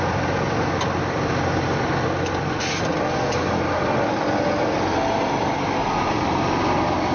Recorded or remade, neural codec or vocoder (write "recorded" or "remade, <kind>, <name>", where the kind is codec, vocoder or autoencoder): recorded